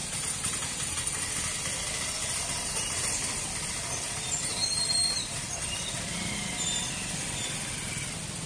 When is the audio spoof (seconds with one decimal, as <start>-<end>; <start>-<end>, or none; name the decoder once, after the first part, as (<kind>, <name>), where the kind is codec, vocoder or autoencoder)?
none